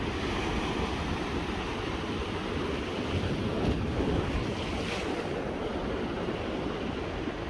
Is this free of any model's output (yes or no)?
yes